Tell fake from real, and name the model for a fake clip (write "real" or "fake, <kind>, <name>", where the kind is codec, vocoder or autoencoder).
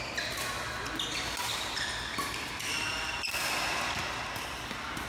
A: real